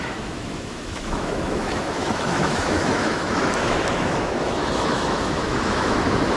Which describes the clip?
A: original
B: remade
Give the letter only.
B